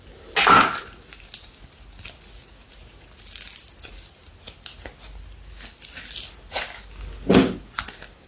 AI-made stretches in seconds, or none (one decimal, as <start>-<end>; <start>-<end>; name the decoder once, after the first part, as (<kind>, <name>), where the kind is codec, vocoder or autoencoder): none